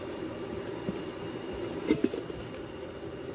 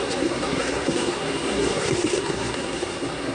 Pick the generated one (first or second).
second